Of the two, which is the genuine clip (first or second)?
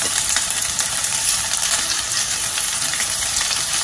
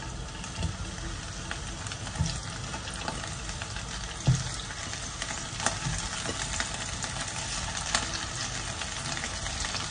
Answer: second